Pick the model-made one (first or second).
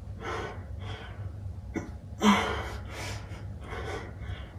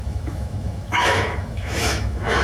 second